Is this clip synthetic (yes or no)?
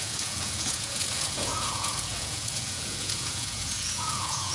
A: yes